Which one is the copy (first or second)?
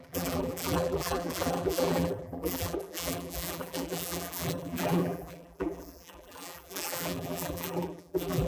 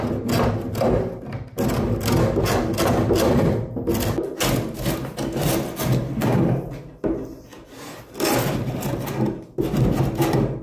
first